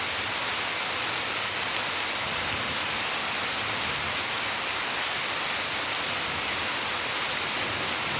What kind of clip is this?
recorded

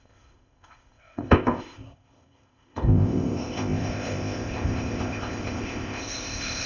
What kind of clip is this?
remade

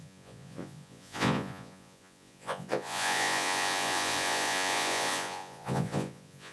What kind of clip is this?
remade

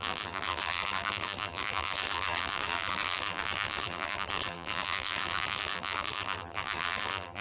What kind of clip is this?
remade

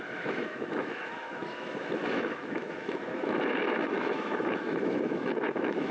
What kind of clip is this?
remade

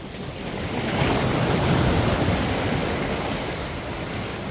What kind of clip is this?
recorded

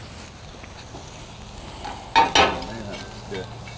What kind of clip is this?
recorded